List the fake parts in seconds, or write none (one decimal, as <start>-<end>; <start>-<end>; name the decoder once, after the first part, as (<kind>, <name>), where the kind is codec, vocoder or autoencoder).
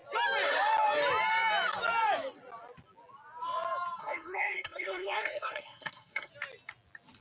4.0-6.3 (codec, SNAC)